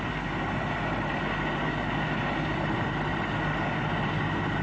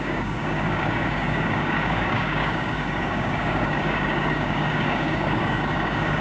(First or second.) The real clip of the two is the first